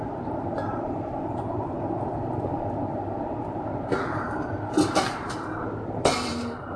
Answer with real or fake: fake